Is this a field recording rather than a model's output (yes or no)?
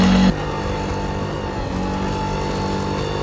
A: yes